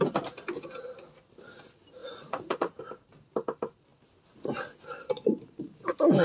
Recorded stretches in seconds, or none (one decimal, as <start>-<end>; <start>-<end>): 0.0-2.0; 2.8-6.2